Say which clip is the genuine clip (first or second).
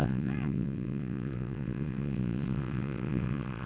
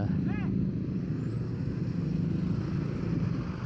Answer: second